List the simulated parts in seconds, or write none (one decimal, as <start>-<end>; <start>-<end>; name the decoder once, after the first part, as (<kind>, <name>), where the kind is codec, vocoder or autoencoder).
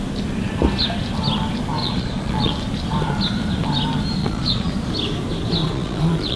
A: 1.8-2.5 (vocoder, Vocos); 4.2-4.7; 5.6-6.4